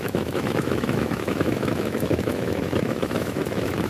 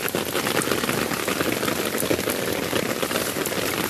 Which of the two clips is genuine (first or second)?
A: second